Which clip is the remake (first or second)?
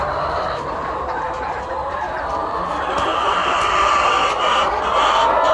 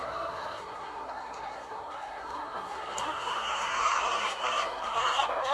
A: second